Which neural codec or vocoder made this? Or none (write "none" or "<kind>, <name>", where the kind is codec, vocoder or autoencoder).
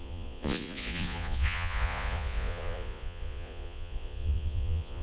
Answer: vocoder, Vocos